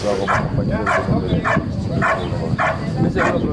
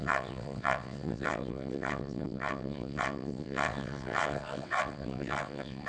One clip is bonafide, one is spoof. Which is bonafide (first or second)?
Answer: first